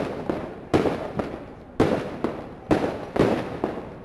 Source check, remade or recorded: recorded